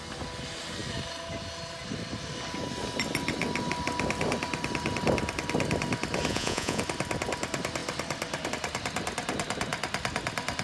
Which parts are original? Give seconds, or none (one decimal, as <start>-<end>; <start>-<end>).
0.0-6.3; 6.8-10.6